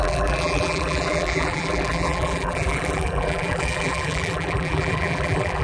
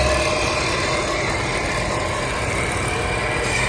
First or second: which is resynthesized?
first